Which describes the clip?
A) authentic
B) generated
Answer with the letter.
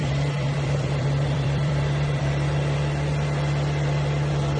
B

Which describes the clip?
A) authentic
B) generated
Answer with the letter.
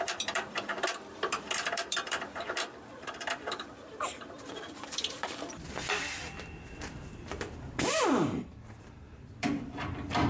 B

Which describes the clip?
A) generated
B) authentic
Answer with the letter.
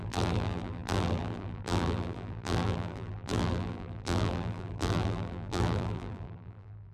A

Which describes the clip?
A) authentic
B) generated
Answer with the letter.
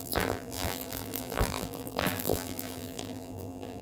B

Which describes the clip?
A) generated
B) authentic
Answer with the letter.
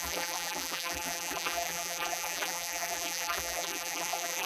A